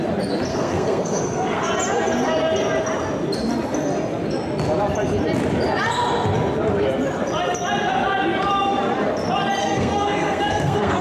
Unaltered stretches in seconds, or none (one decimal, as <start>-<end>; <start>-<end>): 0.0-0.5; 1.7-9.6